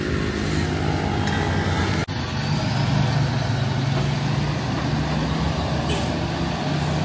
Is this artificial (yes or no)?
no